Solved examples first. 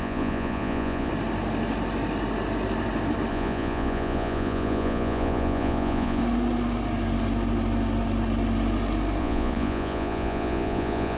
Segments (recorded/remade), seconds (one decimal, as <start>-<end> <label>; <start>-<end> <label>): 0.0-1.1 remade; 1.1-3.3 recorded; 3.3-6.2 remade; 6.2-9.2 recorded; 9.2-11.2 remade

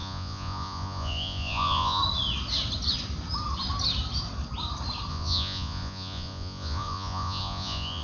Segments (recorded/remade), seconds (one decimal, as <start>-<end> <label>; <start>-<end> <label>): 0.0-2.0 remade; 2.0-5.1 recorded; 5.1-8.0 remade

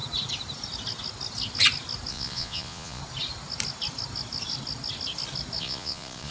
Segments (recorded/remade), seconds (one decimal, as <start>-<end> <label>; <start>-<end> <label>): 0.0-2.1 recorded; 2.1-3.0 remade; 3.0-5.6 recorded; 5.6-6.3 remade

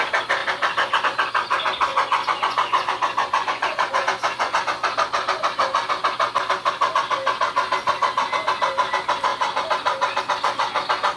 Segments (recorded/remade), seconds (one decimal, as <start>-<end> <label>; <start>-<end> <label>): 0.0-1.9 recorded; 1.9-4.6 remade; 4.6-11.2 recorded

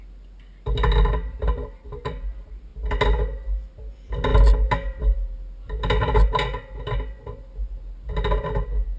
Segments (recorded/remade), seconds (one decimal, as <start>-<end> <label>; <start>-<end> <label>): 0.0-9.0 recorded